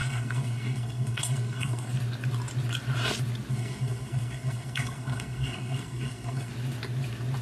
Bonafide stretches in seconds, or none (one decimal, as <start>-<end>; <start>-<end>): 1.9-3.5; 6.5-7.4